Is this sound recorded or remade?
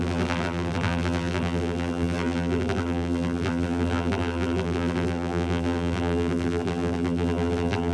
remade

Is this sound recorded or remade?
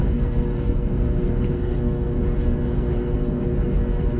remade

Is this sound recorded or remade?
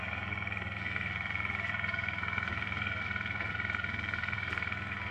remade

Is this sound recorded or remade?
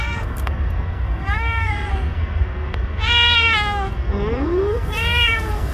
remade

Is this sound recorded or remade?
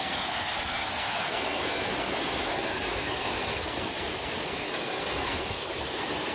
remade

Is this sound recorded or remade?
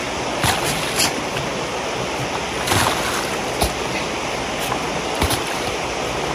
recorded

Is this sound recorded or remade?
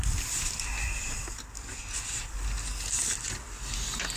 recorded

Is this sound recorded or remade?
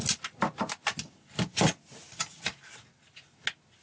recorded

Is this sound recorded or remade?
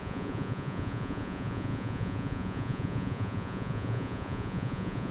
remade